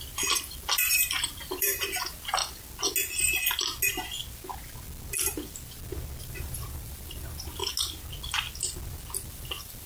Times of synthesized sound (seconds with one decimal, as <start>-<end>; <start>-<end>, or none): 0.0-2.4; 6.2-7.6; 9.3-9.9